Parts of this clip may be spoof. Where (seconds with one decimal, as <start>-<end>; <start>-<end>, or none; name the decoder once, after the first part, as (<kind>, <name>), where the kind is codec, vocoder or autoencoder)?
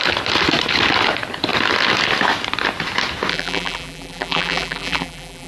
3.3-5.5 (vocoder, BigVGAN v2)